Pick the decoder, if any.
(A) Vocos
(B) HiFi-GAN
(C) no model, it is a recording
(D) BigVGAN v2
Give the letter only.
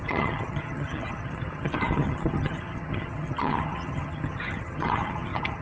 B